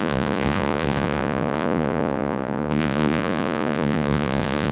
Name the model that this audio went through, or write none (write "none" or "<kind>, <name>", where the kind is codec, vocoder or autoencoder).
vocoder, Vocos